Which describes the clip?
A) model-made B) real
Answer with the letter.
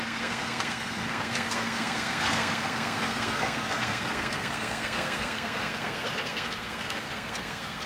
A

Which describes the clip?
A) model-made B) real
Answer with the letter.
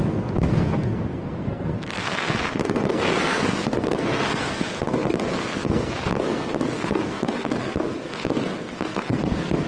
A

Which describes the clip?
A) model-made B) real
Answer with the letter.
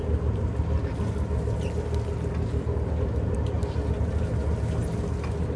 B